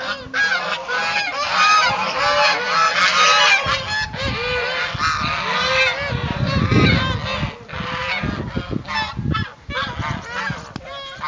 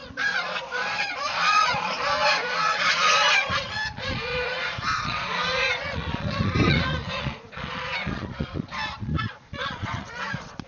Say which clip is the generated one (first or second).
second